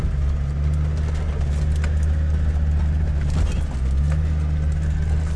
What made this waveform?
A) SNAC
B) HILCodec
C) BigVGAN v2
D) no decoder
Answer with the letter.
D